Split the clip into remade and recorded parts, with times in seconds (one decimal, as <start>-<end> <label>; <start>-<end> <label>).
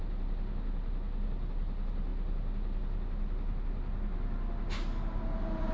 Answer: 0.0-5.7 recorded